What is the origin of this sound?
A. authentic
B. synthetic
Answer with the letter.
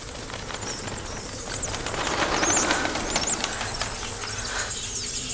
A